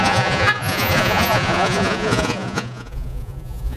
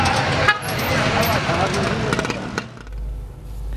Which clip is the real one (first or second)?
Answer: second